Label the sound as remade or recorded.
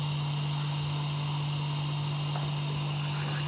recorded